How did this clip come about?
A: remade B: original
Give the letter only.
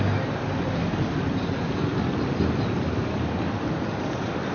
B